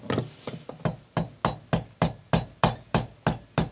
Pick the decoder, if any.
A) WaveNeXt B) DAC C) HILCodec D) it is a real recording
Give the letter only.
D